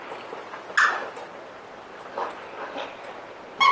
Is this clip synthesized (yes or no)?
no